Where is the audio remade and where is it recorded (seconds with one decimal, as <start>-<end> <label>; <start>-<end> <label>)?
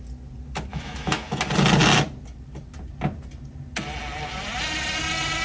0.0-0.7 recorded; 0.7-1.4 remade; 1.4-5.4 recorded